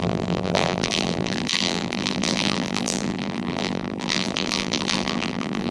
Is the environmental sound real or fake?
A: fake